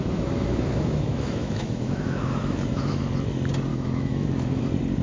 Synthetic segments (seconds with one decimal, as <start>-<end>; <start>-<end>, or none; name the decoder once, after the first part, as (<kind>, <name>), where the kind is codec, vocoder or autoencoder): 0.0-3.0 (autoencoder, DAC-VAE); 3.7-4.6